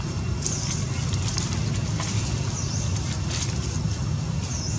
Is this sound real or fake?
real